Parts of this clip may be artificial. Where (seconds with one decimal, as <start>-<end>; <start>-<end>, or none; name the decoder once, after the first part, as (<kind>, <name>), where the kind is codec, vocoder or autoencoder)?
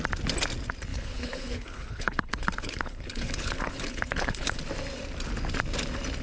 0.9-4.6 (codec, HILCodec)